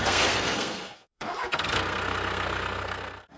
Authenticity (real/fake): fake